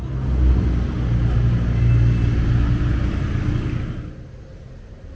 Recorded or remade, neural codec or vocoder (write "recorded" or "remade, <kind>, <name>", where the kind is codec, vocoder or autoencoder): recorded